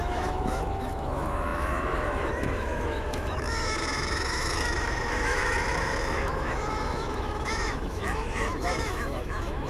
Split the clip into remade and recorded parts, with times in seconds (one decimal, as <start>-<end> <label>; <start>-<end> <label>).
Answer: 0.0-9.7 remade

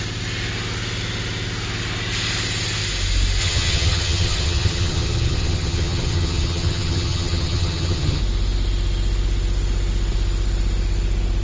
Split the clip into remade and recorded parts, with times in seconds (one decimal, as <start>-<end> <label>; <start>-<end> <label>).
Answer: 0.0-3.4 recorded; 3.4-8.2 remade; 8.2-11.4 recorded